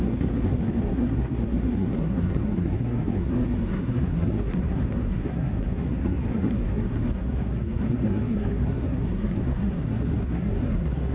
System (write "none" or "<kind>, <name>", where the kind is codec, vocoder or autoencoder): codec, SNAC